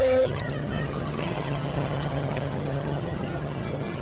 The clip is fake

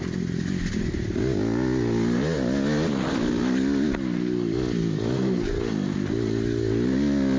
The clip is real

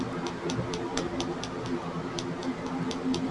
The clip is real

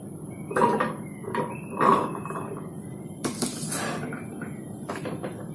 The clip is real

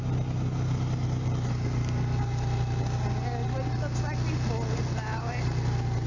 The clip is real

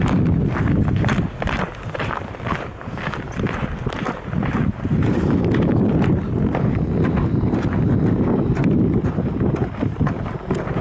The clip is real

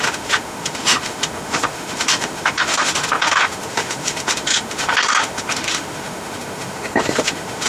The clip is fake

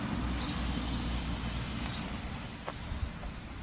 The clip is real